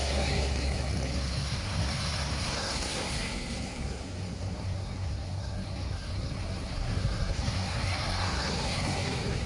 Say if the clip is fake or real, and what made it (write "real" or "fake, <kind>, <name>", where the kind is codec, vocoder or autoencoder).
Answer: fake, codec, SNAC